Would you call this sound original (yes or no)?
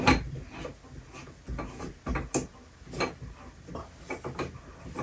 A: yes